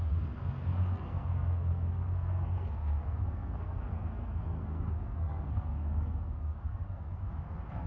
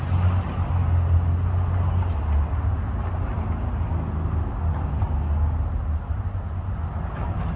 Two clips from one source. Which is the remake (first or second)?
first